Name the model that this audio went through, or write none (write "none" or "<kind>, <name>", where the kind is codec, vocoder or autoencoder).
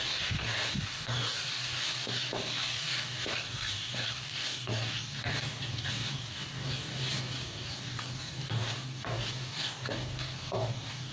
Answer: codec, DAC